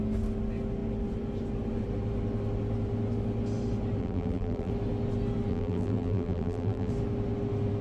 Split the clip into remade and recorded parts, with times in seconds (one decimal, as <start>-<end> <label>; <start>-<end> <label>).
0.0-4.0 recorded; 4.0-4.7 remade; 4.7-5.5 recorded; 5.5-6.9 remade; 6.9-7.8 recorded